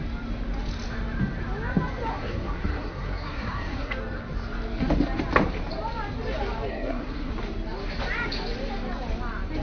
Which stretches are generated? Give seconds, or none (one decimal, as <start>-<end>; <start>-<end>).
2.1-3.9; 6.7-7.3